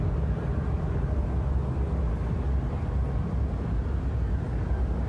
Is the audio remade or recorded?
recorded